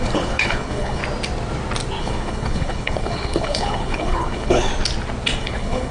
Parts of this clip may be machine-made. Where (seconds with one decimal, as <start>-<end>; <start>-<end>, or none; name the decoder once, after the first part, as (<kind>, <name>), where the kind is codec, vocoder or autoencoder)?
0.0-1.0 (codec, HILCodec); 2.0-4.7; 5.4-5.9